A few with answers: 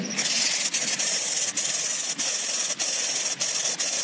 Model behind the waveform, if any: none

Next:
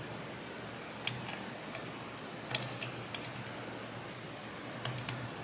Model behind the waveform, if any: none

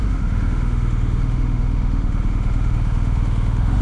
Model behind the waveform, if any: autoencoder, DAC-VAE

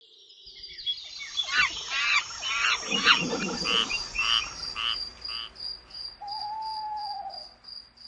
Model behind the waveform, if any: none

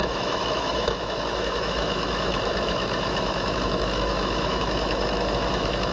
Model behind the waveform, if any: autoencoder, DAC-VAE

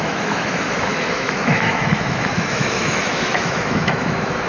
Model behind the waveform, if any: autoencoder, DAC-VAE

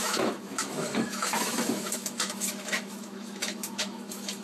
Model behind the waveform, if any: autoencoder, DAC-VAE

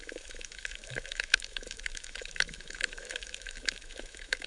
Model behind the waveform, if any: autoencoder, DAC-VAE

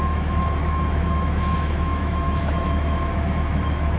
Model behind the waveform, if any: autoencoder, DAC-VAE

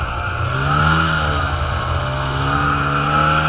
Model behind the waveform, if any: none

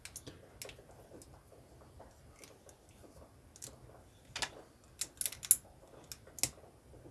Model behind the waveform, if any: none